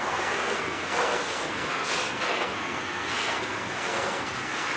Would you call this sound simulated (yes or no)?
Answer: yes